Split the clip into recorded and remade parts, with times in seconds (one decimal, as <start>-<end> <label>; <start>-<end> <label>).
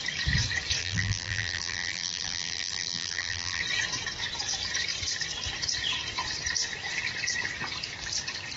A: 0.0-0.8 recorded; 0.8-3.6 remade; 3.6-8.6 recorded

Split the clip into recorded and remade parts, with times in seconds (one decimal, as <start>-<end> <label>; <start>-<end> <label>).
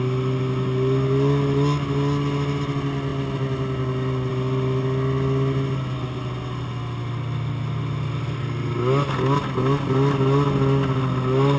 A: 0.0-11.6 recorded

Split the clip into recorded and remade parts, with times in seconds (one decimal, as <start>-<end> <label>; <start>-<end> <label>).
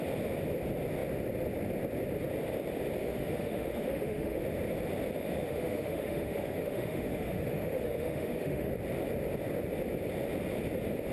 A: 0.0-3.0 recorded; 3.0-4.4 remade; 4.4-5.2 recorded; 5.2-8.7 remade; 8.7-11.1 recorded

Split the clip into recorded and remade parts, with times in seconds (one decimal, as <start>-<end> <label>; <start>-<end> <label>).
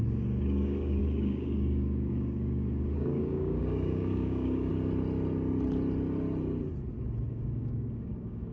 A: 0.0-4.7 remade; 4.7-7.3 recorded; 7.3-8.5 remade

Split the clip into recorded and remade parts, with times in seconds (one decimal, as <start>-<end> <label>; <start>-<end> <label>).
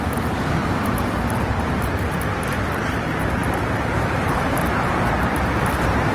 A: 0.0-6.1 remade